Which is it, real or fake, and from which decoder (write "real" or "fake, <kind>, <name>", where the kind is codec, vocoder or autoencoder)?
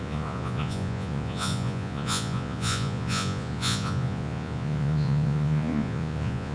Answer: fake, vocoder, Vocos